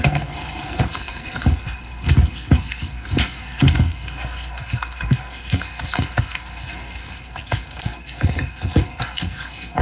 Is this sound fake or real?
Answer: fake